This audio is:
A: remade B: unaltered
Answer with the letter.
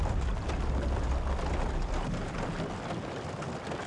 B